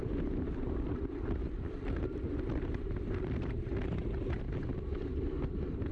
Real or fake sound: real